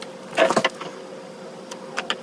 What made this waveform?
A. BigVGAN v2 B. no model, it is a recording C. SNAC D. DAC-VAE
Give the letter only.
B